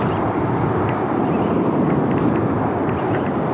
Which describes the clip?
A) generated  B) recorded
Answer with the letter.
B